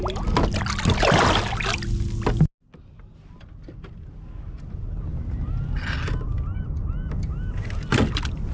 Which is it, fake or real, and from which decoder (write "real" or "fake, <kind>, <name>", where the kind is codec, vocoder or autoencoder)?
real